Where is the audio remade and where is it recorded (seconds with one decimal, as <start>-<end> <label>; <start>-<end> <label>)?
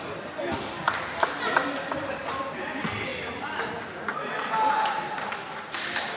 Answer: 0.0-6.2 recorded